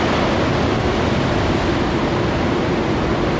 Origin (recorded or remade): recorded